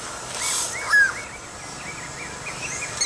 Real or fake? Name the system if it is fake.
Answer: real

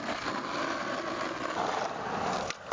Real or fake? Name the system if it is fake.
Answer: real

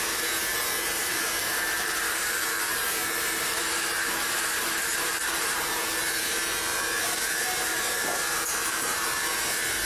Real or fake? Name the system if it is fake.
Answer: fake, vocoder, BigVGAN v2